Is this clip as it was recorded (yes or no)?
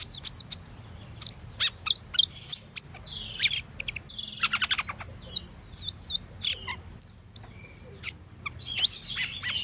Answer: yes